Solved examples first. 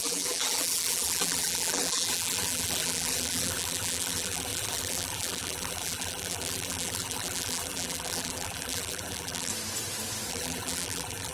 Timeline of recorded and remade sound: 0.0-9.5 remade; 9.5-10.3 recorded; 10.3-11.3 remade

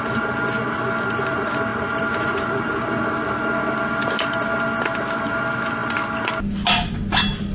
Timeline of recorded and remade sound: 0.0-7.5 recorded

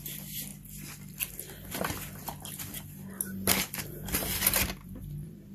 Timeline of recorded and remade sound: 0.0-0.5 remade; 0.5-3.8 recorded; 3.8-5.5 remade

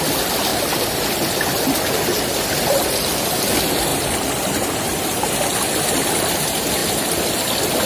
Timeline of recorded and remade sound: 0.0-3.9 recorded; 3.9-5.3 remade; 5.3-7.9 recorded